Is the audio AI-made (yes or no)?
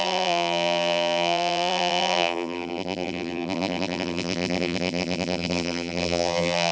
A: yes